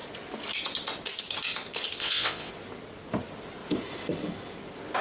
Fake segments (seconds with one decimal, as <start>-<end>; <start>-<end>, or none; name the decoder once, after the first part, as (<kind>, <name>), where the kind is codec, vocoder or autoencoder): 2.0-2.5 (vocoder, WaveNeXt)